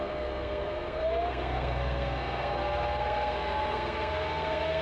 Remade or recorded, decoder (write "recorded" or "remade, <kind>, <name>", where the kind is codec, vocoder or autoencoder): remade, codec, SNAC